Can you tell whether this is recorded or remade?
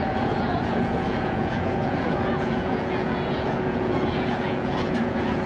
remade